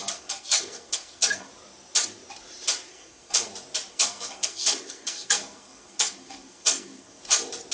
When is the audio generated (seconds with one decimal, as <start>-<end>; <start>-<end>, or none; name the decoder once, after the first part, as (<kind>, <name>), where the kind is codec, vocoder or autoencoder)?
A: 0.0-1.5 (codec, SNAC); 2.9-3.5; 3.9-7.2